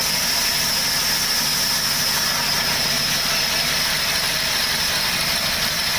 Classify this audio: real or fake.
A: real